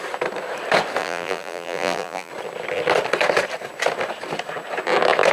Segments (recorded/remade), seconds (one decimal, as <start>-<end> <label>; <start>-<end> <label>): 0.0-1.0 recorded; 1.0-2.3 remade; 2.3-5.3 recorded